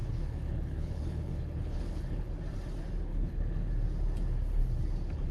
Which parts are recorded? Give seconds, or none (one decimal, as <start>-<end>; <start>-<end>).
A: 2.3-3.1; 3.7-5.3